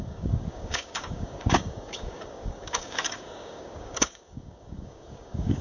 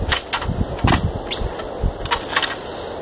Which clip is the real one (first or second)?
second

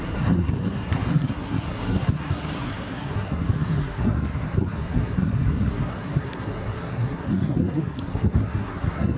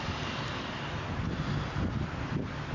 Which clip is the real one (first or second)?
second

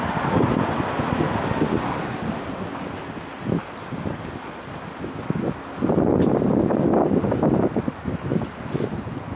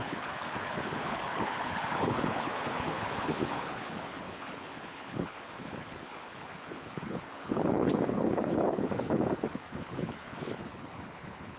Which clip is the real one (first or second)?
first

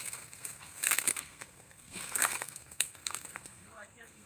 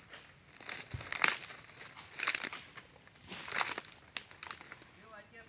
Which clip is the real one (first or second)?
second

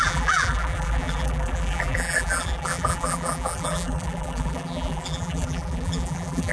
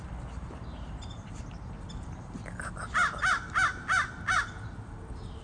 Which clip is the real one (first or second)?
second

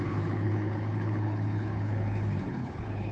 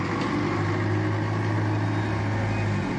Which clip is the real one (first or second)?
second